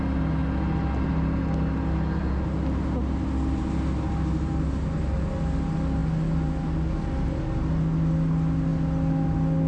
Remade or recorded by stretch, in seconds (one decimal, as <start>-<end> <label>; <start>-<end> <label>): 0.0-9.7 recorded